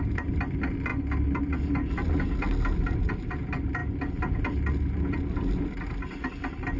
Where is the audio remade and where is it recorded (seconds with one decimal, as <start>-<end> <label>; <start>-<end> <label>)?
0.0-6.8 recorded